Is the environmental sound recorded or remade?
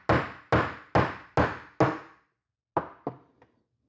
recorded